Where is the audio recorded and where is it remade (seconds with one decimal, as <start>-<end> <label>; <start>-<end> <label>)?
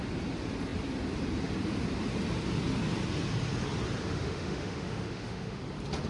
0.0-4.0 recorded; 4.0-5.6 remade; 5.6-6.1 recorded